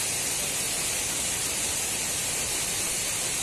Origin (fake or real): fake